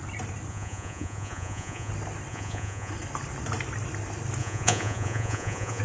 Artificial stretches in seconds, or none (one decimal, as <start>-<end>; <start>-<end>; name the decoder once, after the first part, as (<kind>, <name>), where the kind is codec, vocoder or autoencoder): 0.5-1.9 (vocoder, Vocos); 2.3-2.9; 4.4-5.8